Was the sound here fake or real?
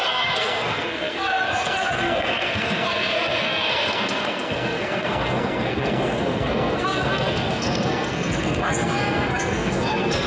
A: fake